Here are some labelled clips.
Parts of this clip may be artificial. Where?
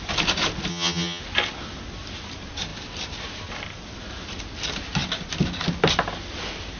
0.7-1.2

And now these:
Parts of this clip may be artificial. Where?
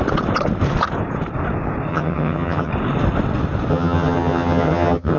1.9-2.7; 3.7-5.2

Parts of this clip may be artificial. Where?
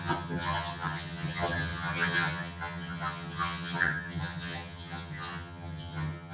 0.0-6.3